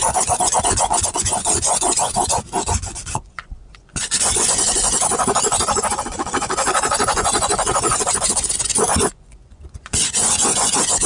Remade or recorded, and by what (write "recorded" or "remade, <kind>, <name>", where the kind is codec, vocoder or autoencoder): remade, vocoder, Vocos